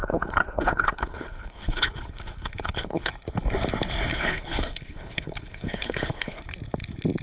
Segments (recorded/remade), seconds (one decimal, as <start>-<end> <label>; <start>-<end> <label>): 0.0-3.1 remade; 3.1-4.1 recorded; 4.1-6.4 remade; 6.4-7.2 recorded